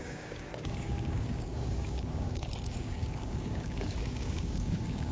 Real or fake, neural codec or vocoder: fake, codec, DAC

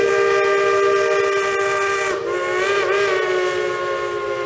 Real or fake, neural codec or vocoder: real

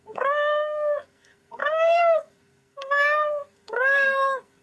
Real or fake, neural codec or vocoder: fake, codec, SNAC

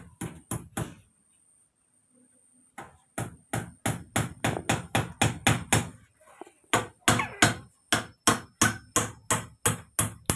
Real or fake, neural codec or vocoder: real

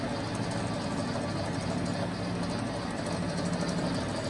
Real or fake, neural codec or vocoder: real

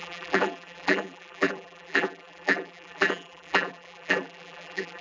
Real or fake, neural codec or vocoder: fake, vocoder, BigVGAN v2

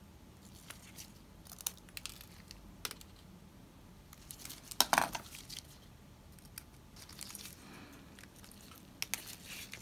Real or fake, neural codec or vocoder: real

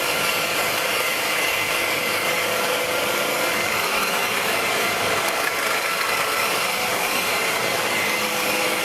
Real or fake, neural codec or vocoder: fake, codec, DAC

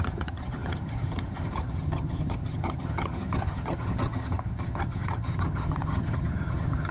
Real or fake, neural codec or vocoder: fake, vocoder, HiFi-GAN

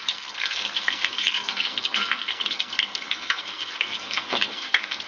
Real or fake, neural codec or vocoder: fake, codec, SNAC